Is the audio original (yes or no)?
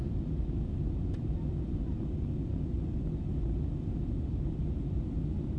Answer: yes